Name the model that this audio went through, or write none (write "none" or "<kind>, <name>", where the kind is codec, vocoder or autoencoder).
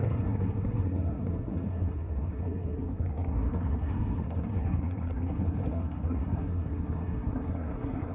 codec, SNAC